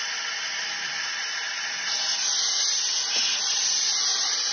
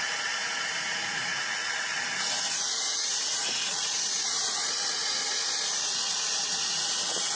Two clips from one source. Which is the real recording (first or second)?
first